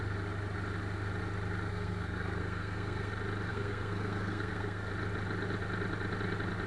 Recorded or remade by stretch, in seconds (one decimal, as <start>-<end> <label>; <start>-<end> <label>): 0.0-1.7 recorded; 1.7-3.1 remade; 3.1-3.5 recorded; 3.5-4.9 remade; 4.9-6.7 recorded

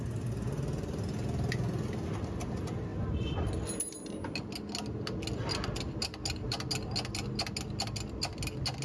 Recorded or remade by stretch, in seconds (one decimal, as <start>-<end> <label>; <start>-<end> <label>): 0.0-8.8 recorded

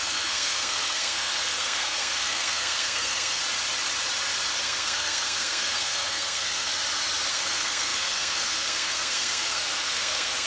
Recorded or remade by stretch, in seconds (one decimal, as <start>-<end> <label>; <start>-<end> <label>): 0.0-3.4 remade; 3.4-4.6 recorded; 4.6-6.7 remade; 6.7-7.3 recorded; 7.3-10.5 remade